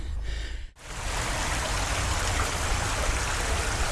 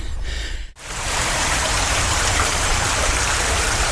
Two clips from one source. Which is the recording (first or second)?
first